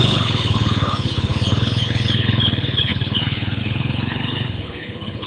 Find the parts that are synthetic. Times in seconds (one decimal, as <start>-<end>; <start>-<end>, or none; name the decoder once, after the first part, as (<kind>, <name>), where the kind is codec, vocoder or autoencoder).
0.0-5.3 (codec, HILCodec)